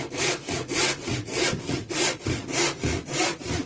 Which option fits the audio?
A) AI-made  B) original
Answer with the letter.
B